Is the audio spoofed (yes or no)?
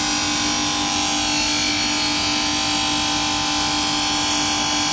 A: no